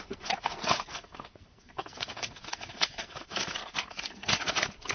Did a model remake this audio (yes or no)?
yes